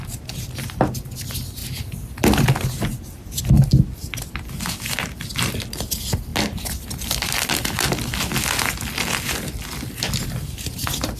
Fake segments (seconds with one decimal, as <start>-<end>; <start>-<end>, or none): none